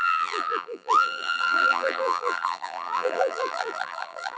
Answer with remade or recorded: remade